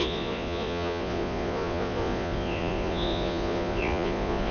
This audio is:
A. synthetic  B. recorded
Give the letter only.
A